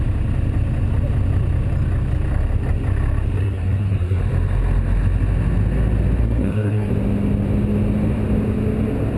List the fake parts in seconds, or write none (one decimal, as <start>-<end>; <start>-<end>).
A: 3.4-4.2; 6.2-6.9